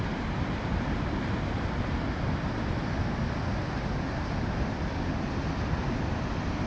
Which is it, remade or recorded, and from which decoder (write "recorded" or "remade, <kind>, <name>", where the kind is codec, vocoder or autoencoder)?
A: recorded